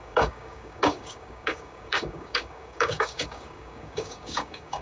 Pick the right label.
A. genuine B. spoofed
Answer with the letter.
B